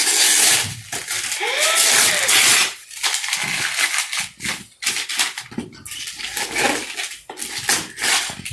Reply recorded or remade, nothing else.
recorded